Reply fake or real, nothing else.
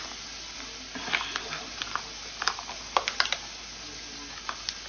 real